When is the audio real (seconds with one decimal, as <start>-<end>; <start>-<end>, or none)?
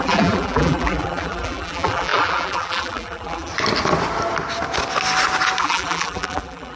3.5-5.6